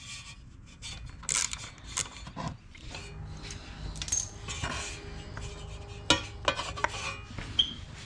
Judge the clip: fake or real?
real